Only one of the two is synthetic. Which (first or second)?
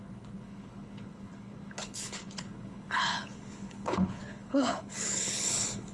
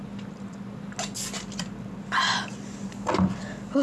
first